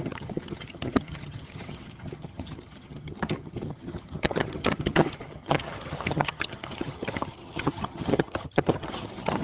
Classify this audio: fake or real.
fake